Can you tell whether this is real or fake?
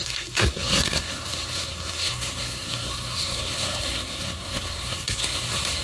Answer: fake